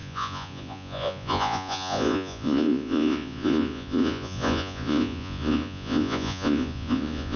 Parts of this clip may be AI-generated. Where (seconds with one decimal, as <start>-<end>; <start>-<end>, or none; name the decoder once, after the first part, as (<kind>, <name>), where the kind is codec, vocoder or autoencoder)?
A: 0.0-7.4 (vocoder, Vocos)